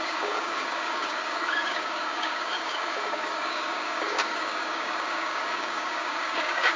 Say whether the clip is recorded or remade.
remade